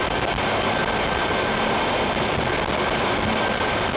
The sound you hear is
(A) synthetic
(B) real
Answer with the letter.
B